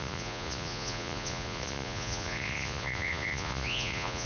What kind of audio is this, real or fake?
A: fake